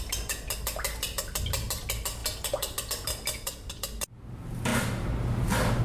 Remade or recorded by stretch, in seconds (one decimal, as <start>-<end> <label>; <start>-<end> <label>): 0.0-5.8 recorded

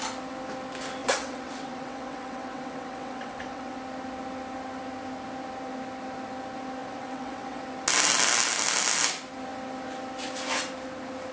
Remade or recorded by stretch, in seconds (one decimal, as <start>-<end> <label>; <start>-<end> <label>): 0.0-1.0 recorded; 1.0-3.8 remade; 3.8-6.8 recorded; 6.8-7.6 remade; 7.6-11.3 recorded